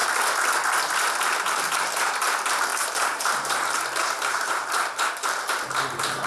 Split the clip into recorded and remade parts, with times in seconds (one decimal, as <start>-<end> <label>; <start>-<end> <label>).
0.0-1.2 recorded; 1.2-6.3 remade

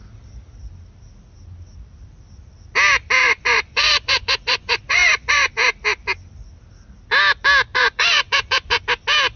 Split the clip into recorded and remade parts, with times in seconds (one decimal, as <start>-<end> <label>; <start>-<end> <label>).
0.0-3.2 recorded; 3.2-5.5 remade; 5.5-7.7 recorded; 7.7-8.8 remade; 8.8-9.4 recorded

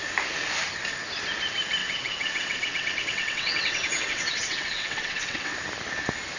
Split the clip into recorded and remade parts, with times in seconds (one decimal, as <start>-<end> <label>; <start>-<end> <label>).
0.0-1.8 recorded; 1.8-5.6 remade; 5.6-6.4 recorded